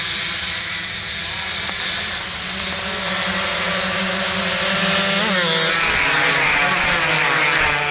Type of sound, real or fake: real